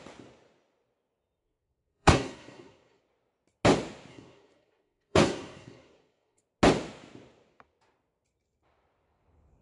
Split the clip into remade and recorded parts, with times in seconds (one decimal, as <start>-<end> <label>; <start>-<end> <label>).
0.0-1.4 recorded; 1.4-3.0 remade; 3.0-4.1 recorded; 4.1-6.4 remade; 6.4-9.6 recorded